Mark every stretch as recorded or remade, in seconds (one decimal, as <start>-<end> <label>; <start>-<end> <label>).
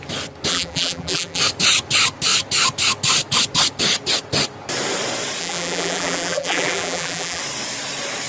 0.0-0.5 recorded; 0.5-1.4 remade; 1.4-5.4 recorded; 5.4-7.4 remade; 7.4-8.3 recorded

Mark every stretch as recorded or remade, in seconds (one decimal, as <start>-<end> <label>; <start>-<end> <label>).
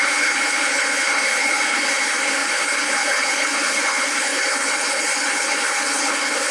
0.0-6.5 remade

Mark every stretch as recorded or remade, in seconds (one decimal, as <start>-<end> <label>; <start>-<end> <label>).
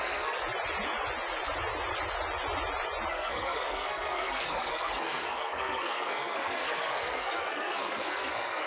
0.0-0.4 remade; 0.4-3.1 recorded; 3.1-8.7 remade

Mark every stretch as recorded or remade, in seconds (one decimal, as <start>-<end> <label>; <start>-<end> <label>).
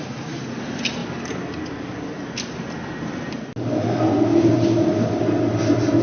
0.0-6.0 recorded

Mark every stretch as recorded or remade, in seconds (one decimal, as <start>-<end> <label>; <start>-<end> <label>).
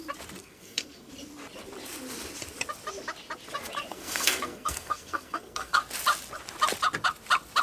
0.0-0.4 recorded; 0.4-1.1 remade; 1.1-3.9 recorded; 3.9-5.8 remade; 5.8-7.6 recorded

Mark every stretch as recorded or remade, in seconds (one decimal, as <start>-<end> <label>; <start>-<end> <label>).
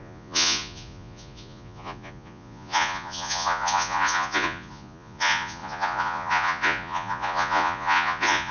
0.0-8.5 remade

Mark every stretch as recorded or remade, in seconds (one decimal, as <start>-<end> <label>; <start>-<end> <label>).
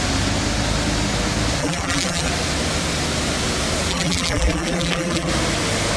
0.0-1.6 recorded; 1.6-2.3 remade; 2.3-3.9 recorded; 3.9-5.3 remade; 5.3-6.0 recorded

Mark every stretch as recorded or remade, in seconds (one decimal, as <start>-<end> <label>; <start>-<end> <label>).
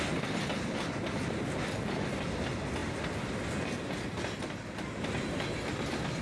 0.0-6.2 recorded